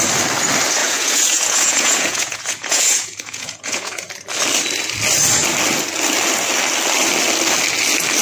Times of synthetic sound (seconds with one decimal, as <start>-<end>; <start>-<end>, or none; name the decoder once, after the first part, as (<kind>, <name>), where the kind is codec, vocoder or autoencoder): 0.8-4.1 (vocoder, Vocos)